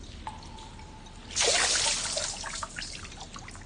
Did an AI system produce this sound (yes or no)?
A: no